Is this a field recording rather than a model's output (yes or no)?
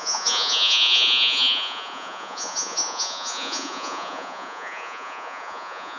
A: no